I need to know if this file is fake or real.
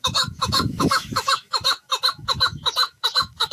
fake